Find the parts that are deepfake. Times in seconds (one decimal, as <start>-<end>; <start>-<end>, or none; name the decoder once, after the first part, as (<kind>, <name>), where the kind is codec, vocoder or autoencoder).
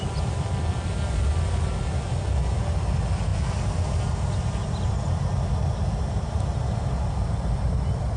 none